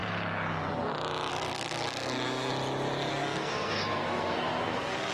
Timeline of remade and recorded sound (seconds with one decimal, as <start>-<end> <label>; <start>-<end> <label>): 0.0-1.3 recorded; 1.3-2.5 remade; 2.5-3.1 recorded; 3.1-5.1 remade